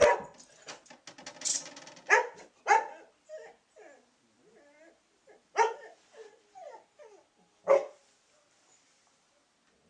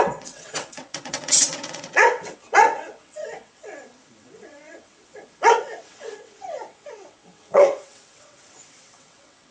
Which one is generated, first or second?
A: second